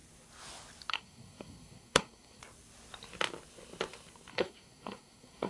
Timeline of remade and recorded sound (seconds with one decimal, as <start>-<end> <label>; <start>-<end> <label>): 0.0-0.9 recorded; 0.9-2.4 remade; 2.4-4.3 recorded; 4.3-5.5 remade